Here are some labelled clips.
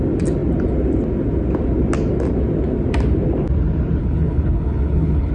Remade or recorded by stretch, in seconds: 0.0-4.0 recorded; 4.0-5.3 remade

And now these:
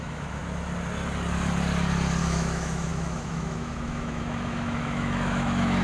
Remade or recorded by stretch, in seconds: 0.0-0.4 remade; 0.4-2.2 recorded; 2.2-5.8 remade

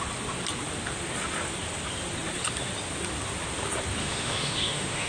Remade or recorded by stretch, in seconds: 0.0-4.0 recorded; 4.0-5.1 remade

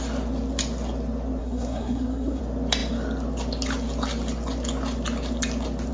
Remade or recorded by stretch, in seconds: 0.0-1.4 recorded; 1.4-2.4 remade; 2.4-5.9 recorded

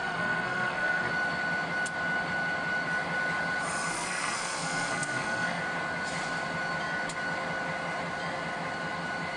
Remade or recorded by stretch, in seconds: 0.0-1.1 remade; 1.1-3.9 recorded; 3.9-5.6 remade; 5.6-9.4 recorded